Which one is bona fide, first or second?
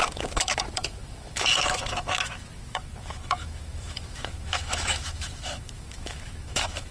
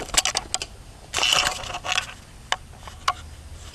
second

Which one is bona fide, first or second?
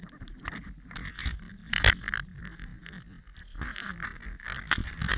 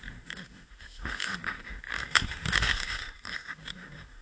first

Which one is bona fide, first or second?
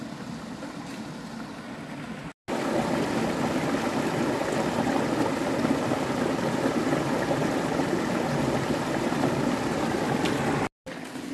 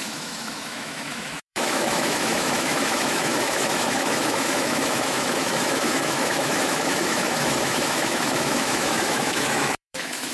first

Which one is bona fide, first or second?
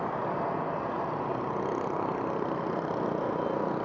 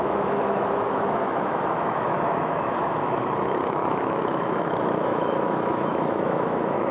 first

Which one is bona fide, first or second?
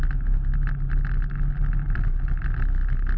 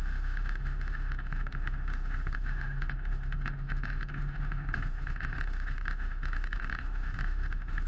first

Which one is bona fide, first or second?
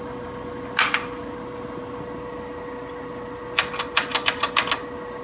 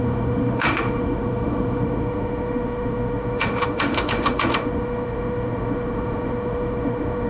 first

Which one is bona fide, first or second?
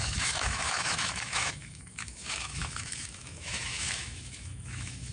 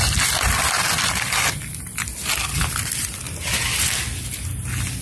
second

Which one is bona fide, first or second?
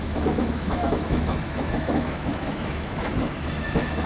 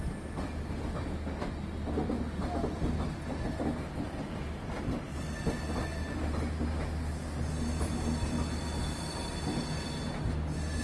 second